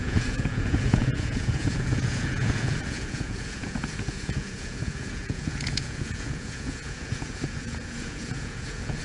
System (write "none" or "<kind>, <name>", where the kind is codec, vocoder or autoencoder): vocoder, Vocos